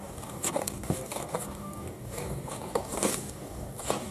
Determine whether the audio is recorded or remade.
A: remade